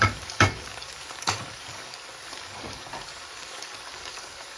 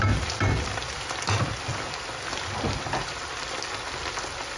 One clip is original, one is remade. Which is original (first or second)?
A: second